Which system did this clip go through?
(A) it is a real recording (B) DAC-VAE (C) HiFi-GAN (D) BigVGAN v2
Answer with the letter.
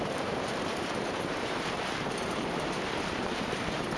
D